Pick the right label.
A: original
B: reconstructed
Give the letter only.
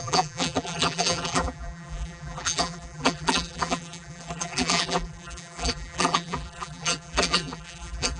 B